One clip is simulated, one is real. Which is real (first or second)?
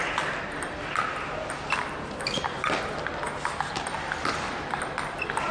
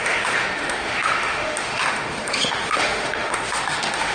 first